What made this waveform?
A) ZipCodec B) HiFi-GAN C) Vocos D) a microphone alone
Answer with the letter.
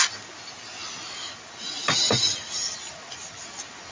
D